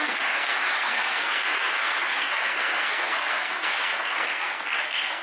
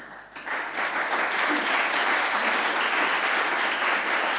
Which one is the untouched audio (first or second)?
second